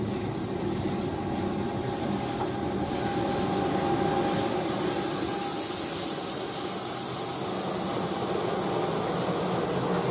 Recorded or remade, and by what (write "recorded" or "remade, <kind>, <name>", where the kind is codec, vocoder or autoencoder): recorded